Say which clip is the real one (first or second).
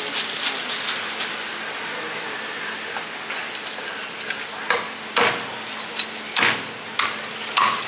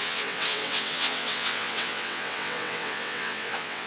first